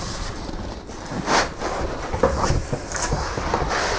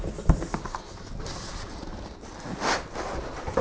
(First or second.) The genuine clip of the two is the second